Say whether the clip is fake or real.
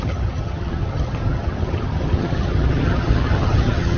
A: fake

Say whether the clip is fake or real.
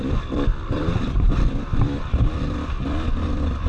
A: fake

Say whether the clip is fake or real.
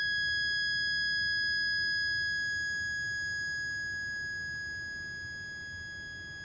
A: real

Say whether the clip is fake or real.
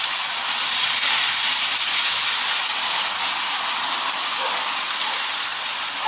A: real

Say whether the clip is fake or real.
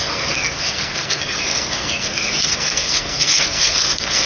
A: fake